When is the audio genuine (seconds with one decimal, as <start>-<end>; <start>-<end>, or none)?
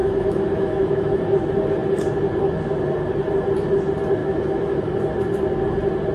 1.2-4.2; 4.8-6.1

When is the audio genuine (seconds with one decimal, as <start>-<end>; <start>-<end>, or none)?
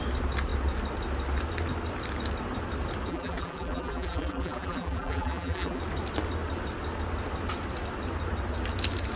0.0-3.1; 5.8-9.2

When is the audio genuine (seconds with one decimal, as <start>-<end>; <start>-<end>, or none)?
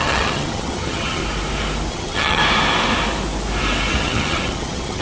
1.2-1.9; 2.4-3.9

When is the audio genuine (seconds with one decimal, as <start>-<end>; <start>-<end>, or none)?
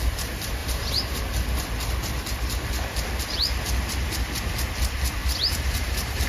0.0-0.6; 1.2-5.2